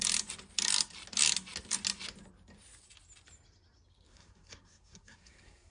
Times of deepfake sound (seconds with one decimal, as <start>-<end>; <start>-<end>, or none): 4.1-5.7